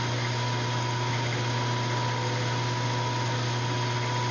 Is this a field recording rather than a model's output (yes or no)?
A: yes